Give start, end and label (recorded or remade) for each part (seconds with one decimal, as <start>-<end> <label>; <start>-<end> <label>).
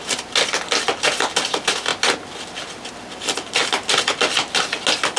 0.0-5.2 recorded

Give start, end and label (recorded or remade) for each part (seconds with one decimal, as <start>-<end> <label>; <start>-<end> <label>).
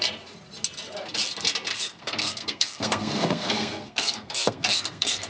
0.0-1.7 recorded; 1.7-5.3 remade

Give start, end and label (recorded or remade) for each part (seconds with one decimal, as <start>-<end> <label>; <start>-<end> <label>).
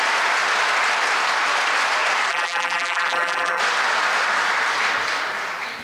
0.0-2.3 recorded; 2.3-3.6 remade; 3.6-5.8 recorded